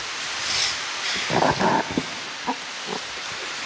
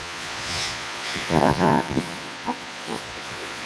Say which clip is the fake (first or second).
second